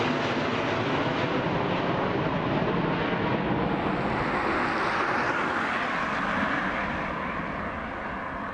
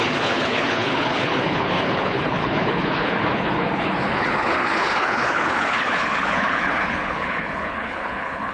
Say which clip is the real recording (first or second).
first